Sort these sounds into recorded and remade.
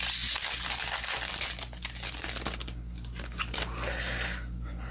recorded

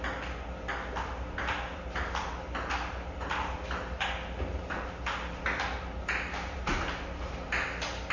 recorded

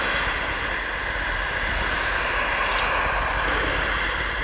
recorded